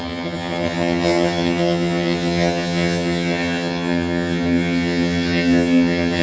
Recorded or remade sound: remade